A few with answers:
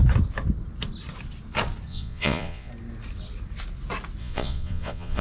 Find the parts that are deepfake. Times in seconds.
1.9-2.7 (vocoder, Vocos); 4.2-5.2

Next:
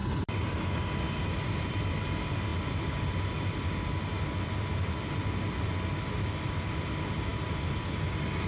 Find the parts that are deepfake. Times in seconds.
none

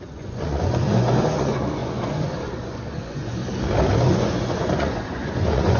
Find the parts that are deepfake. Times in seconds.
0.0-3.4 (vocoder, Vocos); 4.1-5.8

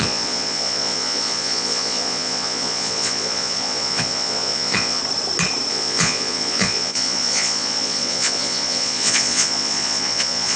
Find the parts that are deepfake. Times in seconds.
0.0-5.0 (vocoder, Vocos); 5.7-10.6

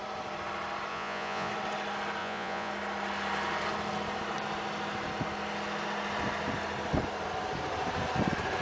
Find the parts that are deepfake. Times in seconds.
0.9-1.5 (vocoder, Vocos); 2.2-2.7

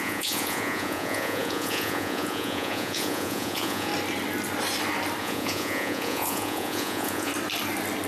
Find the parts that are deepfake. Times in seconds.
0.0-3.9 (vocoder, Vocos); 5.2-7.3

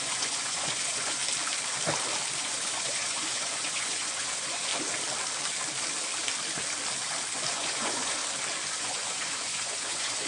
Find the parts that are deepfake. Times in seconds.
0.0-1.2 (vocoder, Vocos); 2.4-4.7; 7.5-8.2; 8.8-10.3